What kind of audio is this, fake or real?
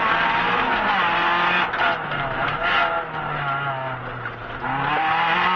real